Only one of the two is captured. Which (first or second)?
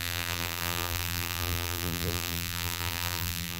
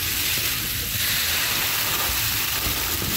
second